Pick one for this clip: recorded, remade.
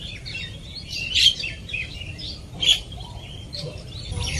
remade